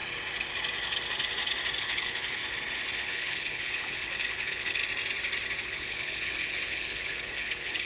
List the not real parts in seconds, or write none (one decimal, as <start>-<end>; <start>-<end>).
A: 1.8-2.4; 3.0-4.8; 5.6-7.9